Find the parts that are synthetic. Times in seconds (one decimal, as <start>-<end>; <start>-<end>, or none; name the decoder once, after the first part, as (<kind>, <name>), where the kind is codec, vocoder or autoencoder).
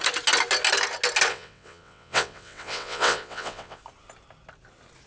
1.3-3.8 (vocoder, WaveNeXt)